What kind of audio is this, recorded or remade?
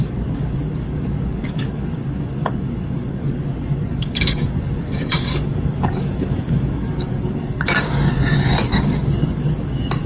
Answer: remade